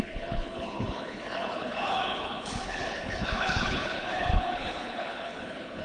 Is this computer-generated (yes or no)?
yes